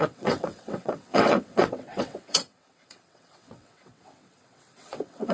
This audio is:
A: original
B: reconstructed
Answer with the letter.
B